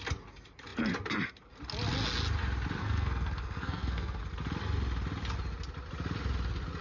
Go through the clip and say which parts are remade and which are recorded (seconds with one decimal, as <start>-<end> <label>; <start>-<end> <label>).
0.0-2.8 recorded; 2.8-4.2 remade; 4.2-6.8 recorded